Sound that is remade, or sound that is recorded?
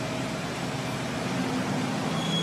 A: recorded